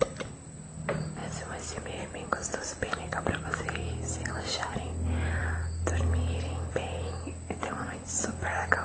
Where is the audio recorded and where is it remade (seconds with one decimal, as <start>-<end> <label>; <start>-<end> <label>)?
0.0-8.8 recorded